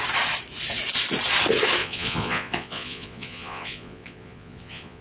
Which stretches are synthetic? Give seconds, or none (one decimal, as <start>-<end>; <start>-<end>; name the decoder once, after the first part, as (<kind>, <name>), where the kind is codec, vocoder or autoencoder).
1.8-5.0 (vocoder, Vocos)